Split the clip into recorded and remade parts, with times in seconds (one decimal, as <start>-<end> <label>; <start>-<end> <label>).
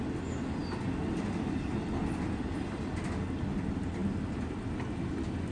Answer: 0.0-5.5 recorded